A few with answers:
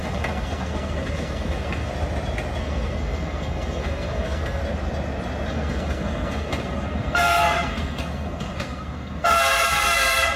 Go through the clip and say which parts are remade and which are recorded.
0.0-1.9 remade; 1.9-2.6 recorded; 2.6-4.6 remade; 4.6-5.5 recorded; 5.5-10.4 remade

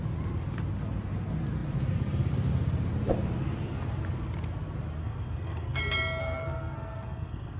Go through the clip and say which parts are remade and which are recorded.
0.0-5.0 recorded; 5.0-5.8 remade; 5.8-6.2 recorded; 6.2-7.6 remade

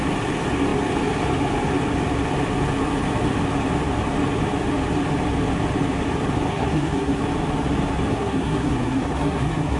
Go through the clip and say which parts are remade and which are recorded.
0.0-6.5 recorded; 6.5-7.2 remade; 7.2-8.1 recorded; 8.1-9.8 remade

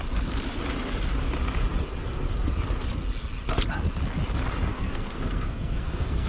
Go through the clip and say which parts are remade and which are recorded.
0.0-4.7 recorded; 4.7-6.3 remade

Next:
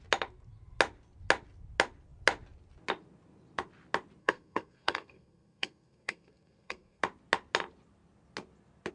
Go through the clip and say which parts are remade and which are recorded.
0.0-4.2 recorded; 4.2-7.0 remade; 7.0-8.9 recorded

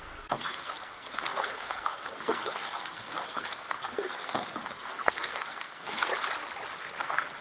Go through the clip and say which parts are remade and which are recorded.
0.0-6.1 remade; 6.1-7.0 recorded; 7.0-7.4 remade

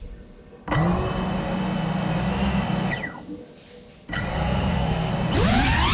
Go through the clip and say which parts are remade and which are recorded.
0.0-4.3 recorded; 4.3-5.1 remade; 5.1-5.9 recorded